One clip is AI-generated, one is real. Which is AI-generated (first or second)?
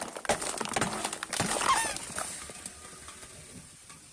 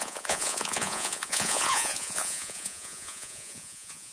second